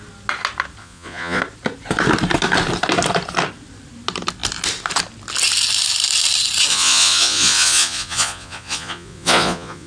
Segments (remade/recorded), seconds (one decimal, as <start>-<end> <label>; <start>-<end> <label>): 0.0-0.8 recorded; 0.8-1.4 remade; 1.4-6.7 recorded; 6.7-9.9 remade